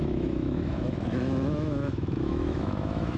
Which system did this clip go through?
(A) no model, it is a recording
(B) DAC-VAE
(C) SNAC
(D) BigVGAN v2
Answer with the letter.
B